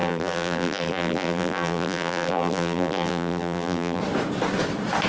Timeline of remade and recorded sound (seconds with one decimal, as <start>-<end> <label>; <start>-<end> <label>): 0.0-4.0 remade; 4.0-5.1 recorded